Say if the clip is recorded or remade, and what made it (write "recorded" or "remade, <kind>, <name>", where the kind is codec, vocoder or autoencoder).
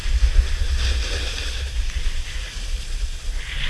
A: recorded